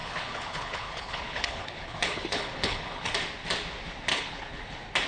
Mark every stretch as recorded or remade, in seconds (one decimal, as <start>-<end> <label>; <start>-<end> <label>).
0.0-3.1 remade; 3.1-4.1 recorded; 4.1-4.6 remade; 4.6-5.1 recorded

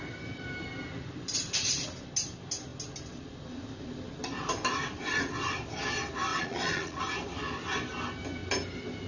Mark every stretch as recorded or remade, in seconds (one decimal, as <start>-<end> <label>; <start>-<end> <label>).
0.0-6.3 recorded; 6.3-7.0 remade; 7.0-9.1 recorded